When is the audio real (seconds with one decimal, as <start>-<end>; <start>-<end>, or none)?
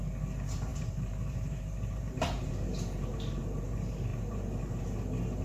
0.0-0.7; 3.6-4.1; 4.8-5.4